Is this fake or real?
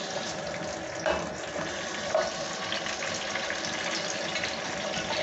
real